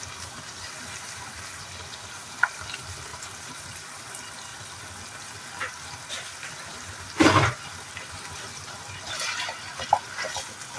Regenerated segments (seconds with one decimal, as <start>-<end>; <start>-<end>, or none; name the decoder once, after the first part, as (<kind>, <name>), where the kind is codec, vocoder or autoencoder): 3.1-3.6 (vocoder, BigVGAN v2); 6.7-9.7